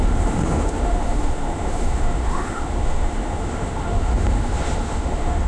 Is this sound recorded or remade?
remade